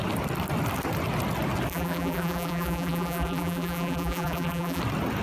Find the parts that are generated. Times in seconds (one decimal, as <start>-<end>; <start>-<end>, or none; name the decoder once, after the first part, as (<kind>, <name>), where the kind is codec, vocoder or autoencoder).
1.7-4.8 (vocoder, BigVGAN v2)